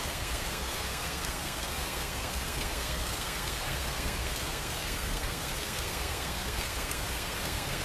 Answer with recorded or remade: remade